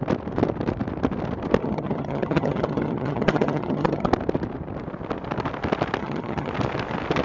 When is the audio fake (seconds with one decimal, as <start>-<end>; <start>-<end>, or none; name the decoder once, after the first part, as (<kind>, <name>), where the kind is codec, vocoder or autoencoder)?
1.6-4.1 (vocoder, HiFi-GAN); 6.0-6.5